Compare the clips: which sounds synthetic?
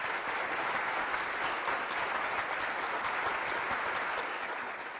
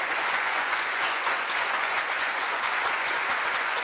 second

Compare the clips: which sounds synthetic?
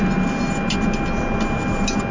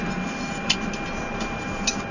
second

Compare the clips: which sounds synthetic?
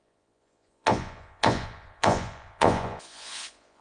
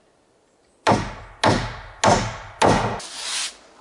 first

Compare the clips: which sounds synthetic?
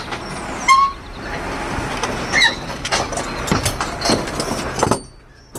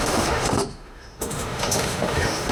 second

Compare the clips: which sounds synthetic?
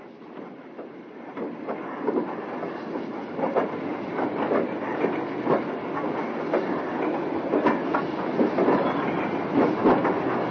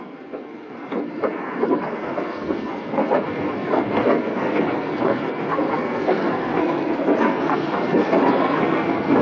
second